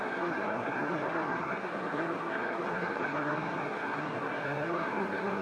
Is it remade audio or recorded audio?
remade